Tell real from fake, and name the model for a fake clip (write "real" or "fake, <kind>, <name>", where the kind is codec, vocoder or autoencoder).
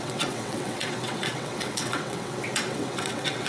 fake, vocoder, WaveNeXt